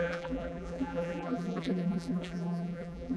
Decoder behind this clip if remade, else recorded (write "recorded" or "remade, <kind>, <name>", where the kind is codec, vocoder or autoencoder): remade, vocoder, BigVGAN v2